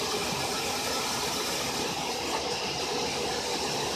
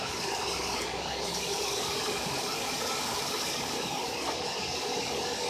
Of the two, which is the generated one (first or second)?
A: second